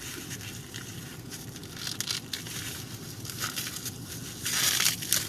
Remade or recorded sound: recorded